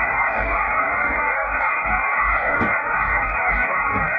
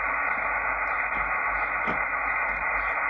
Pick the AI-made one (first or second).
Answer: first